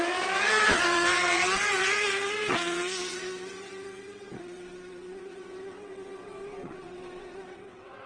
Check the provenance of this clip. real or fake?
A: fake